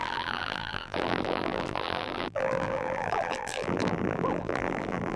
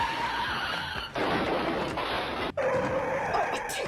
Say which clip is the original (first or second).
second